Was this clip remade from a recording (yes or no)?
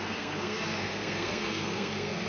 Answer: yes